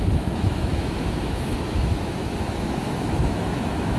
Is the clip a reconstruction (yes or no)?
yes